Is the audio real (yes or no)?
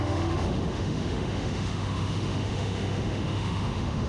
no